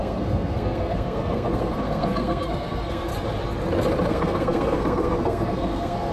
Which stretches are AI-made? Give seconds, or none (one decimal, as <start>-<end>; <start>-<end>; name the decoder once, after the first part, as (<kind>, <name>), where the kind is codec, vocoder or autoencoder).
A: 0.0-3.1 (codec, SNAC); 4.1-6.1